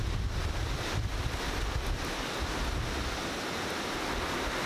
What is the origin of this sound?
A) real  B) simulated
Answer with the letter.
A